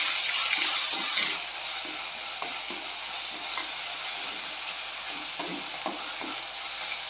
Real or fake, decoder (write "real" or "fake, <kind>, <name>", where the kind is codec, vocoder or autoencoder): real